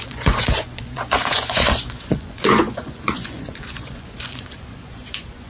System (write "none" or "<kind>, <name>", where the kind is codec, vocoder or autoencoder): vocoder, Vocos